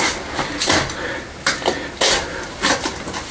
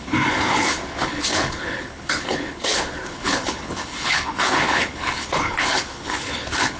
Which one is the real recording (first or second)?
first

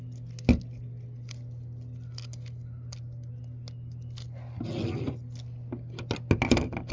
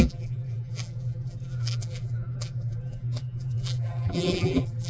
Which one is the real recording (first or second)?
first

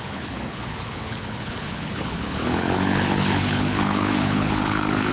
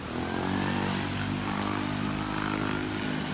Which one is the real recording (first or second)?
second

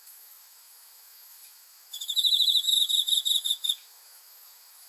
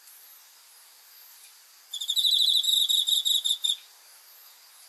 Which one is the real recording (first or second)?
second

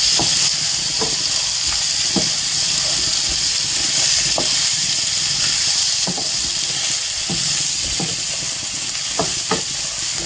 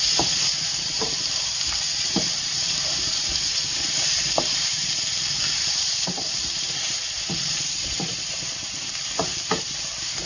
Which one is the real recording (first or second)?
first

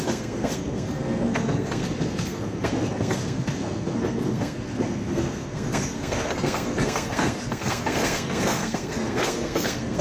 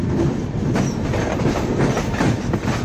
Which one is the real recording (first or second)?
second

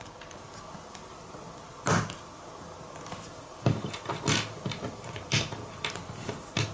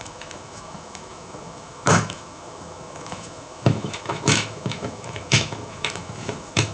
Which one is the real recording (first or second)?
first